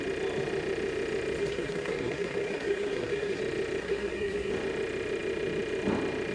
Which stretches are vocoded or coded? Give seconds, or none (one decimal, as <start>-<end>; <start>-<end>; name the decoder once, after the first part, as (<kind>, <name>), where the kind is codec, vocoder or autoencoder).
1.4-3.4 (codec, SNAC); 3.8-4.5